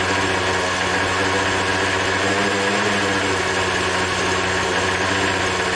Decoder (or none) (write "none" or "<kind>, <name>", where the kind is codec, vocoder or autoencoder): none